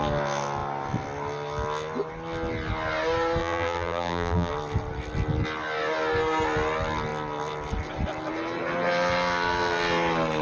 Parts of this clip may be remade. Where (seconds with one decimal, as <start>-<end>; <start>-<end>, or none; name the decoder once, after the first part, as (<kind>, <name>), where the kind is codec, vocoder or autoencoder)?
3.4-4.5 (vocoder, BigVGAN v2)